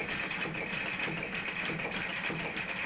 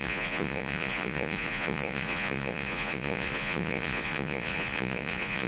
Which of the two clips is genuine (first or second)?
first